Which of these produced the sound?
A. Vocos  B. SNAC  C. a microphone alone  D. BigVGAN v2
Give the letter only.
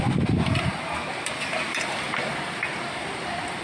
C